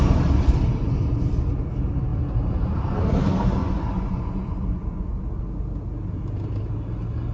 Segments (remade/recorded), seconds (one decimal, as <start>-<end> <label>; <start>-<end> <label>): 0.0-3.6 recorded; 3.6-5.2 remade; 5.2-7.3 recorded